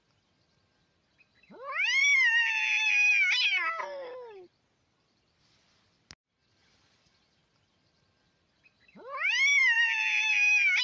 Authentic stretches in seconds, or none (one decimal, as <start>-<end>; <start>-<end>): 0.0-2.0; 3.1-6.6